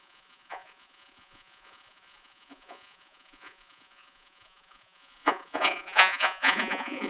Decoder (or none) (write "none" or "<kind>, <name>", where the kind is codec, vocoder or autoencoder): vocoder, Vocos